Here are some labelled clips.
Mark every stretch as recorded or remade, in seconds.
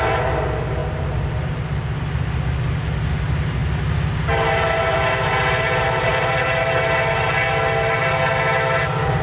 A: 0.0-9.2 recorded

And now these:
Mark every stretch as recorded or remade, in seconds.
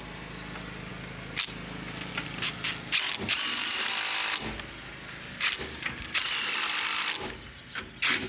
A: 0.0-8.3 recorded